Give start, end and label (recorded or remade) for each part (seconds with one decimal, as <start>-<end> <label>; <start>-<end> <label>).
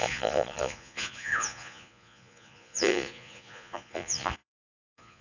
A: 0.0-5.2 remade